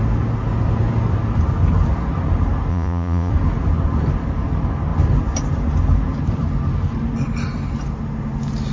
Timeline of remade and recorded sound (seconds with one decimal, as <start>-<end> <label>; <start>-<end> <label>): 0.0-2.7 recorded; 2.7-3.3 remade; 3.3-8.7 recorded

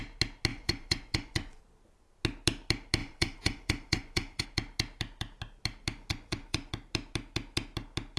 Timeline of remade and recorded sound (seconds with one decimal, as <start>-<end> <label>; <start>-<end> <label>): 0.0-0.5 recorded; 0.5-1.6 remade; 1.6-3.0 recorded; 3.0-4.4 remade; 4.4-6.1 recorded; 6.1-6.7 remade; 6.7-8.2 recorded

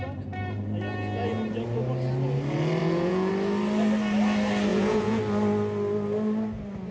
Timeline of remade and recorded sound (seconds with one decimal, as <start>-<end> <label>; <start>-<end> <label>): 0.0-2.8 recorded; 2.8-3.3 remade; 3.3-4.7 recorded; 4.7-5.2 remade; 5.2-6.9 recorded

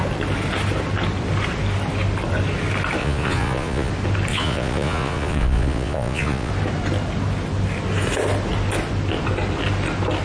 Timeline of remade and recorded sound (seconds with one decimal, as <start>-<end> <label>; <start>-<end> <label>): 0.0-3.0 recorded; 3.0-3.9 remade; 3.9-4.3 recorded; 4.3-6.5 remade; 6.5-10.2 recorded

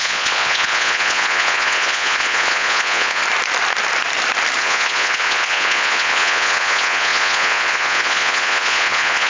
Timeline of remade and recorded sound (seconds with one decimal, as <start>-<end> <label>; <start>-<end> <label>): 0.0-3.2 remade; 3.2-4.6 recorded; 4.6-9.3 remade

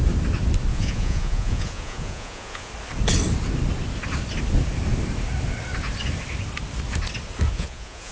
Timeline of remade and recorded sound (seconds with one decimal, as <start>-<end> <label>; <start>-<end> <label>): 0.0-0.7 recorded; 0.7-2.7 remade; 2.7-7.5 recorded; 7.5-8.1 remade

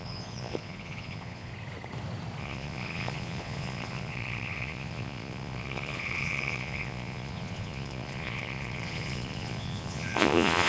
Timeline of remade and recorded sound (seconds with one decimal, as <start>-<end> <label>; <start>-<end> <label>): 0.0-1.5 remade; 1.5-2.4 recorded; 2.4-10.7 remade

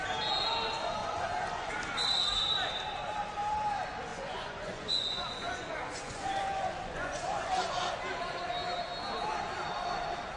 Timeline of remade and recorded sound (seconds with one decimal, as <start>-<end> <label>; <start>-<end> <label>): 0.0-1.0 recorded; 1.0-1.7 remade; 1.7-4.1 recorded; 4.1-7.9 remade; 7.9-10.4 recorded